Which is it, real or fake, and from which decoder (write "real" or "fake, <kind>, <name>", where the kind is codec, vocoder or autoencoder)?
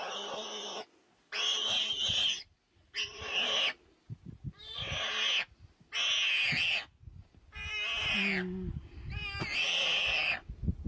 real